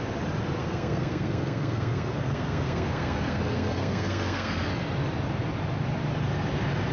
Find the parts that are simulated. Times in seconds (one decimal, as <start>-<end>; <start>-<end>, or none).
0.6-4.7